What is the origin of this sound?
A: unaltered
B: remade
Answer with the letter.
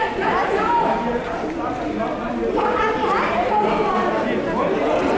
A